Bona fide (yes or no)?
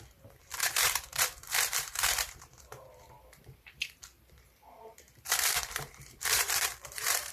no